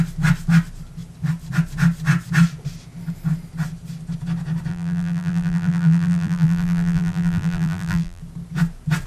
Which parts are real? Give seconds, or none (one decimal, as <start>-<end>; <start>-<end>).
0.0-4.7; 8.2-9.1